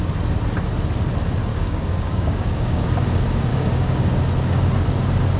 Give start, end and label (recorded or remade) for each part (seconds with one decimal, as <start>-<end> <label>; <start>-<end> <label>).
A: 0.0-1.5 recorded; 1.5-2.9 remade; 2.9-3.5 recorded; 3.5-4.2 remade; 4.2-5.4 recorded